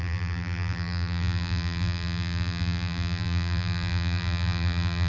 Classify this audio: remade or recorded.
remade